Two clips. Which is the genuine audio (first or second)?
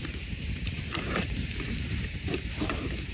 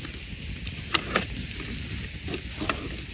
second